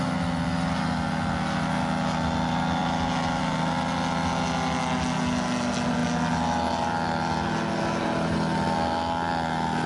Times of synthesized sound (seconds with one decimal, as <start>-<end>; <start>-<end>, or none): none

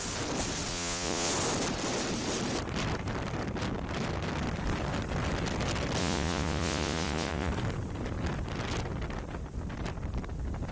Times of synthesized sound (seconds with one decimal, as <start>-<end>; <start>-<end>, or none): 0.7-1.3; 6.0-7.5

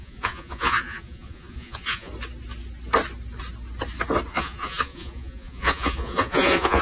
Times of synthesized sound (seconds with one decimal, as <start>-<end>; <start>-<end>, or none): 0.0-2.1; 4.3-6.8